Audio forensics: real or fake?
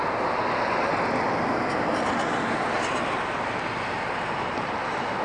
real